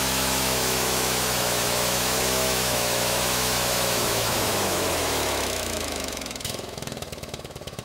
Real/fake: fake